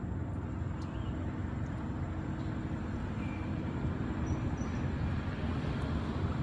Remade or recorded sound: recorded